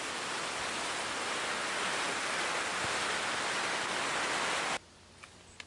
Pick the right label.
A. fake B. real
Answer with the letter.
B